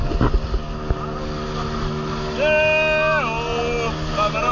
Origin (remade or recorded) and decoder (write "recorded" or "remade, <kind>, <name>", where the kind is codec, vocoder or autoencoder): recorded